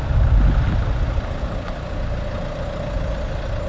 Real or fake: real